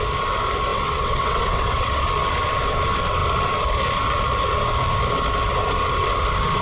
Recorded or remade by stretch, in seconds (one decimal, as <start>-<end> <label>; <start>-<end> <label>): 0.0-0.7 recorded; 0.7-2.0 remade; 2.0-6.6 recorded